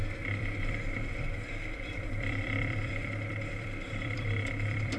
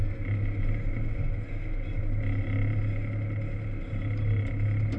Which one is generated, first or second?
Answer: first